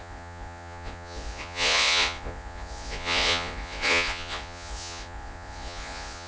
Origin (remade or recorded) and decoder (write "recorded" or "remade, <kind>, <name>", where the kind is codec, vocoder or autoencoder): remade, vocoder, Vocos